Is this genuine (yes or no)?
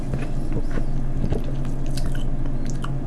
yes